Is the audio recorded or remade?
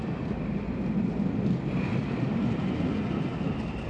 recorded